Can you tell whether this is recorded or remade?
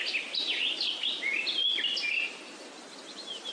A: recorded